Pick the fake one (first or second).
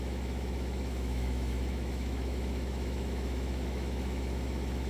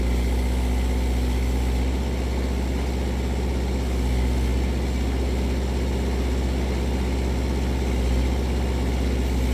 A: first